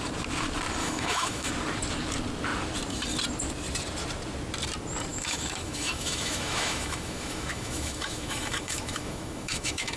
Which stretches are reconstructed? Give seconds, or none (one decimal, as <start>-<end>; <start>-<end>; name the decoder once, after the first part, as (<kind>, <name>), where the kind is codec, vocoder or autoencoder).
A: 0.8-1.5 (autoencoder, DAC-VAE); 5.1-10.0